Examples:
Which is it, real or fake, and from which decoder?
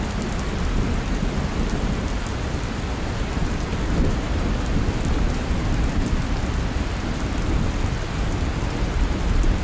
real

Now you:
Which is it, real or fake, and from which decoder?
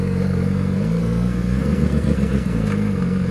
fake, codec, SNAC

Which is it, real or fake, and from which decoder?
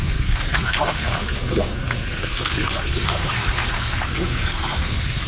fake, codec, SNAC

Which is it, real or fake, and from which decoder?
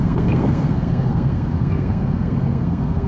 fake, codec, SNAC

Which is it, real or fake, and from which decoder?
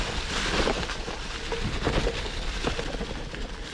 real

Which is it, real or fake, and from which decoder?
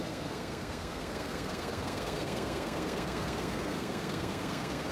fake, codec, SNAC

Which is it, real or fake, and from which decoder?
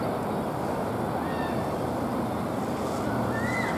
real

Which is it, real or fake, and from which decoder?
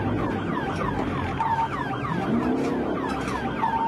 real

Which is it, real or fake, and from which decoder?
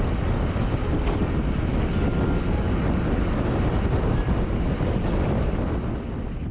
real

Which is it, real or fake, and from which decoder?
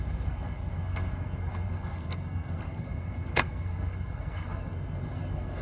fake, codec, SNAC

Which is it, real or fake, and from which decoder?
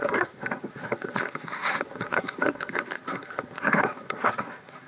fake, codec, SNAC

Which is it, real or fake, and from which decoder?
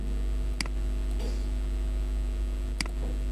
real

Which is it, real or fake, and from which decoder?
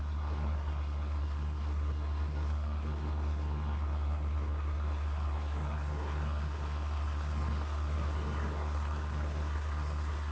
fake, codec, SNAC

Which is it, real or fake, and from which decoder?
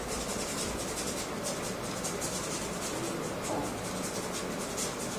real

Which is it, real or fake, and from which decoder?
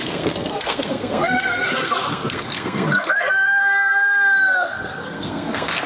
fake, codec, SNAC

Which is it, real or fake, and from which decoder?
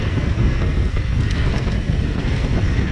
fake, codec, SNAC